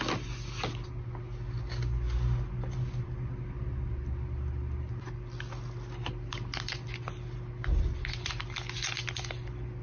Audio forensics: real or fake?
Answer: real